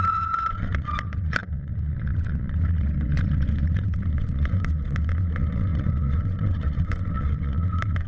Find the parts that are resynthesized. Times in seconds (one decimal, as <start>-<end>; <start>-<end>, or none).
0.0-8.1